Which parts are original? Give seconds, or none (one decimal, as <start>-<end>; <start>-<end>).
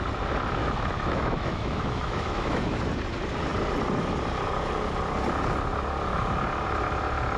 0.0-0.6; 2.8-7.4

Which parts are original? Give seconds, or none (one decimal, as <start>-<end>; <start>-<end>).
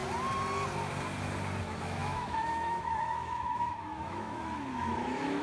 0.0-1.6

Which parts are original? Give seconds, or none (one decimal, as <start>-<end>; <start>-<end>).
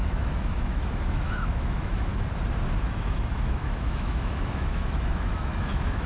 2.1-2.8